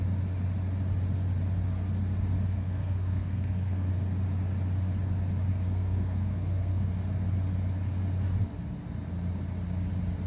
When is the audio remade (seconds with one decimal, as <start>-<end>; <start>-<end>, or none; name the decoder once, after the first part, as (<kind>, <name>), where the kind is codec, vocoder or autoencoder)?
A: 2.5-3.9 (codec, SNAC); 5.5-6.9